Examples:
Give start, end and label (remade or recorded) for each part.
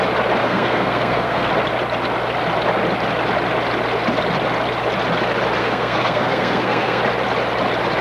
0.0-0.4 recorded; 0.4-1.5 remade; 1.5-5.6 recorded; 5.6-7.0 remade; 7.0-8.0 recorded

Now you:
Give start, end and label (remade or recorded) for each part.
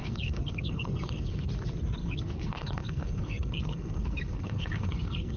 0.0-1.5 remade; 1.5-2.0 recorded; 2.0-5.4 remade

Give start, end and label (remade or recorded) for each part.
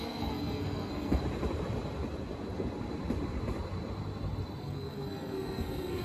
0.0-1.2 remade; 1.2-4.6 recorded; 4.6-6.0 remade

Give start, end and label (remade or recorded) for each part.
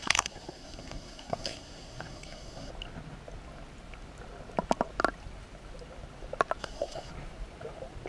0.0-2.7 remade; 2.7-6.6 recorded; 6.6-7.1 remade; 7.1-8.1 recorded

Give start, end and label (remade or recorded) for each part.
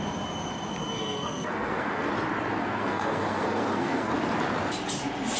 0.0-1.0 recorded; 1.0-2.1 remade; 2.1-2.6 recorded; 2.6-4.1 remade; 4.1-5.4 recorded